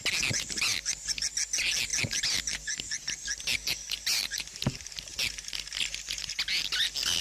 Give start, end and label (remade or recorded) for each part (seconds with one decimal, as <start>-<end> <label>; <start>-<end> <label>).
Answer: 0.0-7.2 recorded